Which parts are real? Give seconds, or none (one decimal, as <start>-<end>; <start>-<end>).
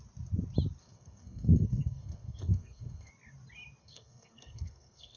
0.0-0.8; 3.1-3.8